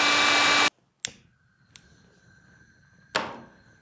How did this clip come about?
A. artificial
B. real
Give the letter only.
B